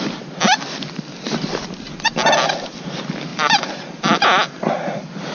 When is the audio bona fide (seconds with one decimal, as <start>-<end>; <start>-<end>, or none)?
0.0-3.3; 4.2-5.3